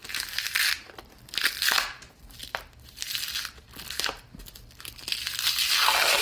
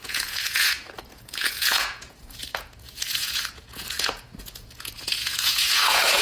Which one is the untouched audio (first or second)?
first